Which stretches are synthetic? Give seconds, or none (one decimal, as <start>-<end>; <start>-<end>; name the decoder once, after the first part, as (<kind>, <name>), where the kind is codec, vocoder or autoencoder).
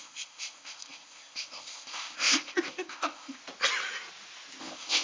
0.0-3.4 (codec, ZipCodec); 4.6-5.0